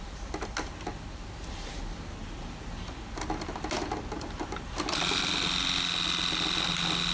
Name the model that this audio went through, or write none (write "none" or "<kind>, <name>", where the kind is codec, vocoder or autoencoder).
none